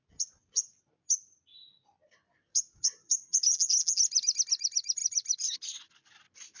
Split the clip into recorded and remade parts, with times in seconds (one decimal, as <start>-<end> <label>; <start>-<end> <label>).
0.0-3.5 recorded; 3.5-4.0 remade; 4.0-6.6 recorded